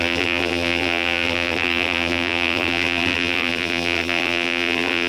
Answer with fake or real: fake